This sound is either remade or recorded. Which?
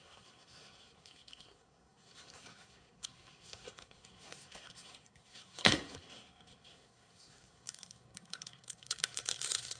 remade